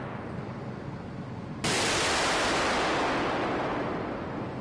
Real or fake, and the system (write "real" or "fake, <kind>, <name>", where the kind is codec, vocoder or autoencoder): real